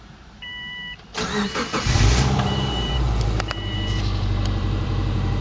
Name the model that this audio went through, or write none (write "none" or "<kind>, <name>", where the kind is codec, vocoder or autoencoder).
vocoder, BigVGAN v2